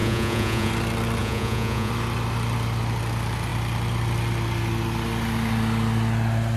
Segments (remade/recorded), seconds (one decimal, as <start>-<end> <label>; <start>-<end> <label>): 0.0-0.7 remade; 0.7-1.2 recorded; 1.2-1.9 remade; 1.9-6.6 recorded